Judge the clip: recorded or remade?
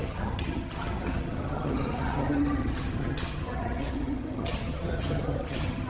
remade